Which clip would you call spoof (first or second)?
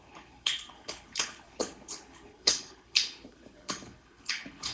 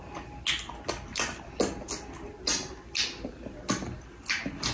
first